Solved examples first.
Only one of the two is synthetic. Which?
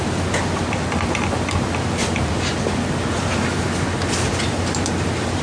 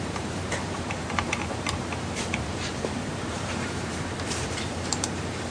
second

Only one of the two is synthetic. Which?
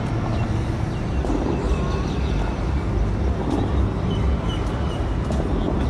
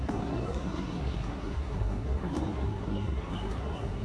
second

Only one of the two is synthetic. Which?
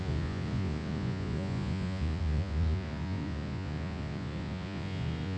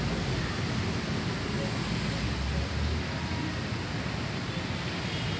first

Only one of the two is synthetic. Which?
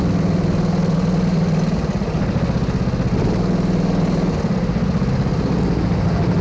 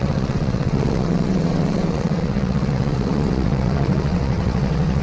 second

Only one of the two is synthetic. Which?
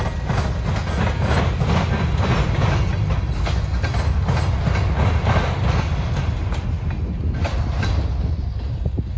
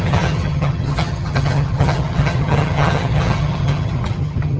second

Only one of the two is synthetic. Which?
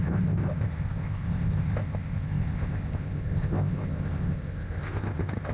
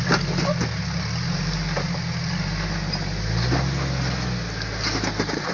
first